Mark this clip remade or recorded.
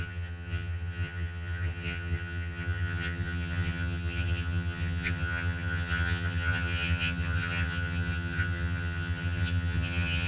remade